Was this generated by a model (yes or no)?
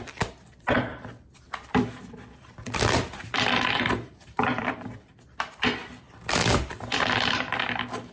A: yes